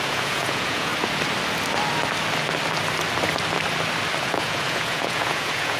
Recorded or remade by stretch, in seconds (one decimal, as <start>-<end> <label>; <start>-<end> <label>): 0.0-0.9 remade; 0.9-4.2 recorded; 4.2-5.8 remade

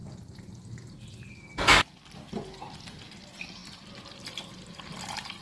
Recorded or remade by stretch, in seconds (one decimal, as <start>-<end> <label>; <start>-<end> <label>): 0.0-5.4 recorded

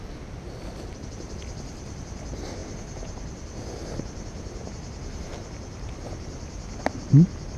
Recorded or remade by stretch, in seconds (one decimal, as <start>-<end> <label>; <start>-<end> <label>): 0.0-7.6 recorded

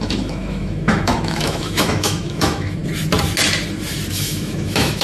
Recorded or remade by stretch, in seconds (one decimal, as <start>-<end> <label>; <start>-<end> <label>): 0.0-2.8 remade; 2.8-4.1 recorded; 4.1-5.0 remade

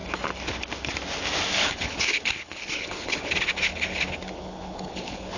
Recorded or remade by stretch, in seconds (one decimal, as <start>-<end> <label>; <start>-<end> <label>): 0.0-1.5 recorded; 1.5-5.4 remade

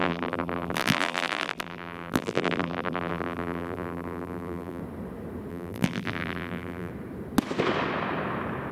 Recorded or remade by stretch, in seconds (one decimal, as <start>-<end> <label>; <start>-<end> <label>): 0.0-4.8 remade; 4.8-5.5 recorded; 5.5-6.9 remade; 6.9-8.7 recorded

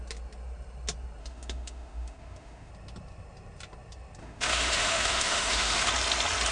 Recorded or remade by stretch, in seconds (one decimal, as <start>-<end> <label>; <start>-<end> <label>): 0.0-1.2 recorded; 1.2-2.7 remade; 2.7-4.2 recorded; 4.2-5.9 remade; 5.9-6.5 recorded

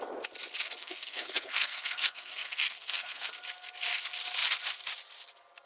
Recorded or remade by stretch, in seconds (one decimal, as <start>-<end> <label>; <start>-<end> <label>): 0.0-0.8 recorded; 0.8-3.3 remade; 3.3-5.7 recorded